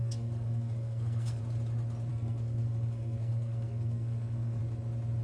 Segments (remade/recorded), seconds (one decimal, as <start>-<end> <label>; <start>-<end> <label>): 0.0-1.4 remade; 1.4-2.1 recorded; 2.1-4.6 remade; 4.6-5.2 recorded